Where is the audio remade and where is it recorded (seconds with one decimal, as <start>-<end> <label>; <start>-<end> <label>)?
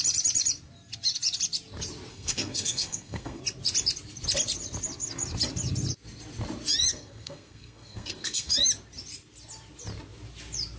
0.0-2.1 recorded; 2.1-3.4 remade; 3.4-6.9 recorded; 6.9-8.5 remade; 8.5-10.8 recorded